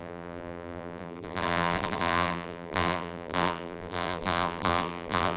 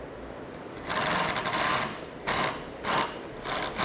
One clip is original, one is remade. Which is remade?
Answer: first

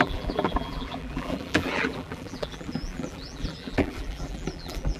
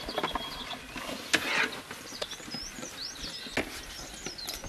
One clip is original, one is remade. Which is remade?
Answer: first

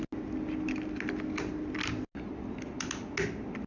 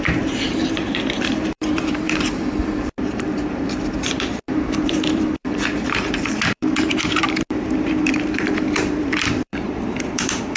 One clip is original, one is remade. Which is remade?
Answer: second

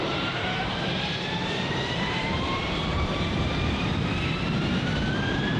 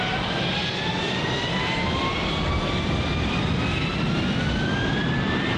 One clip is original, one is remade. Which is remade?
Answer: first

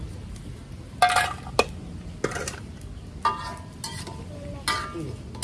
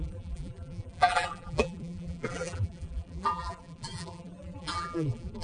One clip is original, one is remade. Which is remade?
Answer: second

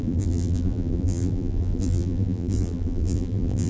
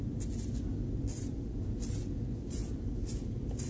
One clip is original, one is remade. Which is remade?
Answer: first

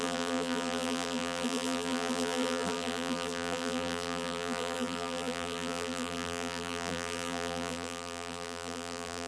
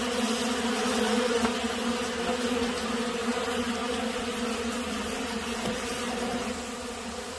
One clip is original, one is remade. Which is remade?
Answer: first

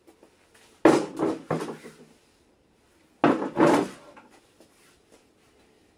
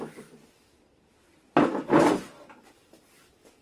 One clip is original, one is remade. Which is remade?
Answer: second